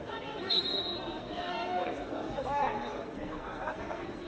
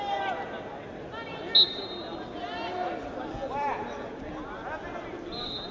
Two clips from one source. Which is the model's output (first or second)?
first